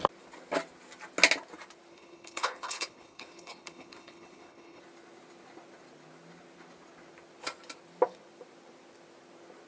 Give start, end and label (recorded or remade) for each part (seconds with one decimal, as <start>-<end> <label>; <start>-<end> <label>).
0.0-1.9 recorded; 1.9-4.8 remade; 4.8-9.7 recorded